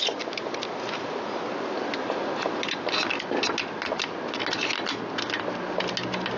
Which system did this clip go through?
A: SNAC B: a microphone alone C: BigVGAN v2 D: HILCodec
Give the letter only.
B